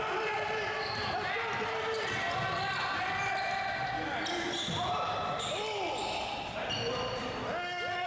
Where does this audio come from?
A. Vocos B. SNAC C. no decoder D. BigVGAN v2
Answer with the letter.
C